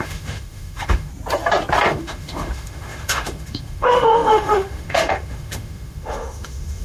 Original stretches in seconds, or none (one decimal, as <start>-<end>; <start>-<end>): 1.1-1.9